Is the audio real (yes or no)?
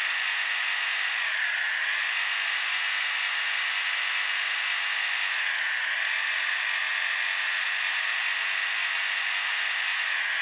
yes